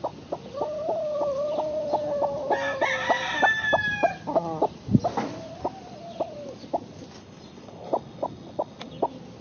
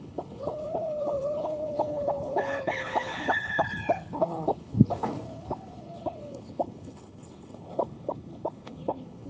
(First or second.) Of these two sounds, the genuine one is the first